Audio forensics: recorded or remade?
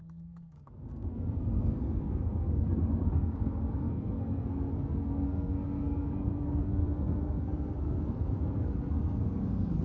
remade